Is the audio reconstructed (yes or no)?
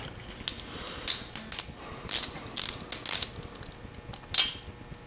no